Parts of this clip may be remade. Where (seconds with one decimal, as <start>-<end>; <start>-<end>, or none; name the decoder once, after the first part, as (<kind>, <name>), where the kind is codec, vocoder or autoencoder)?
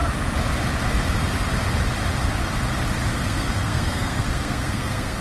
3.1-5.2 (codec, SNAC)